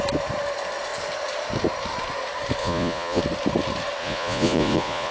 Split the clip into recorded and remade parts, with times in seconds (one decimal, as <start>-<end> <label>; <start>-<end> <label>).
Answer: 0.0-2.6 recorded; 2.6-3.2 remade; 3.2-4.0 recorded; 4.0-5.1 remade